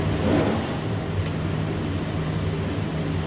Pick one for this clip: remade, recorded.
recorded